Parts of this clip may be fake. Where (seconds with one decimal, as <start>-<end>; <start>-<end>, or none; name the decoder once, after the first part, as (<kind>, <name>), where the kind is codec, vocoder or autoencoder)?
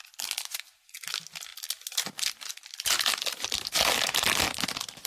none